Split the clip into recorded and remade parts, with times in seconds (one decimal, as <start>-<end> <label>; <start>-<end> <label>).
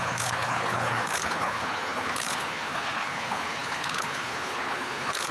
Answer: 0.0-5.3 remade